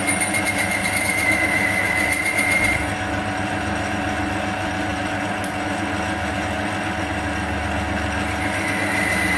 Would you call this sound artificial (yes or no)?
no